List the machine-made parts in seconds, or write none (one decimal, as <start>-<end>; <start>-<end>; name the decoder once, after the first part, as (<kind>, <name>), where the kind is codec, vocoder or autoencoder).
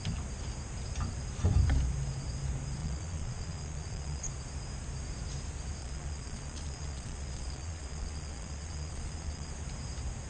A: 2.8-4.3 (vocoder, Vocos); 5.8-9.5